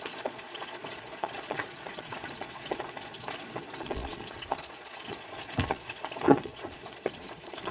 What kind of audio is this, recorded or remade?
remade